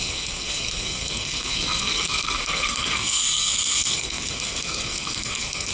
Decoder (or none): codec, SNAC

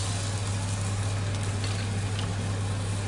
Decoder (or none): none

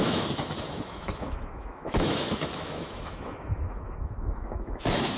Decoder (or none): autoencoder, DAC-VAE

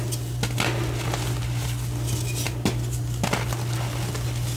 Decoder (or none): none